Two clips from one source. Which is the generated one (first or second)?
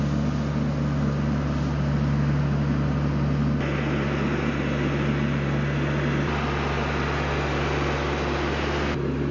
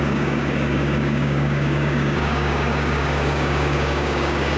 second